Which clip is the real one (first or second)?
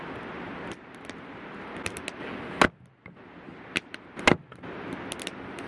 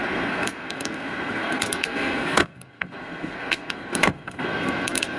first